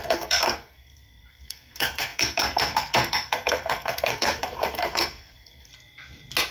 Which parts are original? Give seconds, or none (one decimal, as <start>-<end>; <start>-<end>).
5.7-6.5